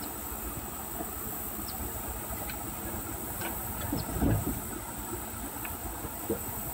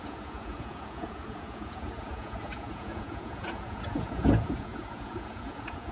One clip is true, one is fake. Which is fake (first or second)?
second